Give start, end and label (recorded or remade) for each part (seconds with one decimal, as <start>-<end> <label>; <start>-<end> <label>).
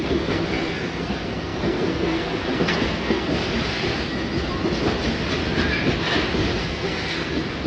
0.0-3.4 remade; 3.4-6.6 recorded; 6.6-7.7 remade